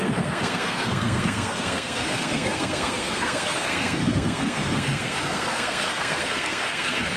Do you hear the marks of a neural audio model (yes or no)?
yes